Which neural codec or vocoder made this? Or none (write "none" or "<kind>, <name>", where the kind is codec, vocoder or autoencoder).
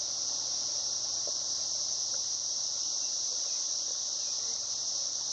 none